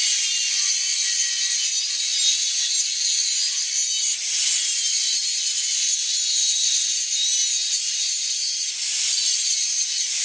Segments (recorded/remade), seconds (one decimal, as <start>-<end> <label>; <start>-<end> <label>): 0.0-10.2 recorded